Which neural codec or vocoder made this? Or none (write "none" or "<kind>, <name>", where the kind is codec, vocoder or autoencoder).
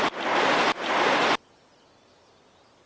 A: none